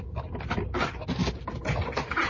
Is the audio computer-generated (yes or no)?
no